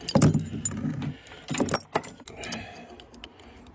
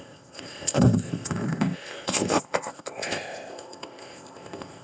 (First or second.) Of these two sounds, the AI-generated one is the second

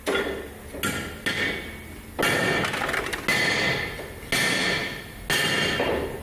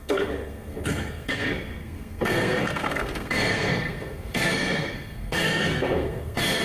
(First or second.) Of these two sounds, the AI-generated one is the second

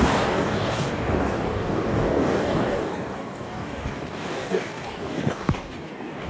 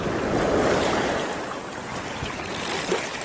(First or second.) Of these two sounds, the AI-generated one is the first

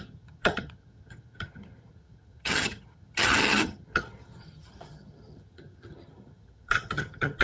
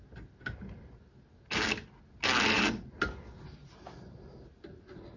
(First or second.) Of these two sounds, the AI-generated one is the first